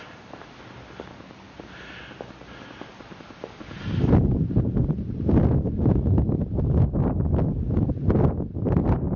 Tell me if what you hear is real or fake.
real